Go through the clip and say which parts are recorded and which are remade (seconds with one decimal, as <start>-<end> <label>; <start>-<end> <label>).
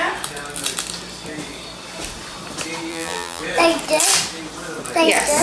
0.0-2.9 recorded; 2.9-3.4 remade; 3.4-5.4 recorded